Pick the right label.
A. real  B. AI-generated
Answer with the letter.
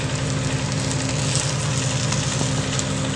A